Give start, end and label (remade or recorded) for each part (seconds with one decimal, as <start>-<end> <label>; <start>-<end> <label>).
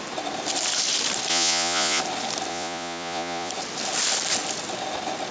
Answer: 0.0-1.3 recorded; 1.3-2.0 remade; 2.0-2.5 recorded; 2.5-3.5 remade; 3.5-5.3 recorded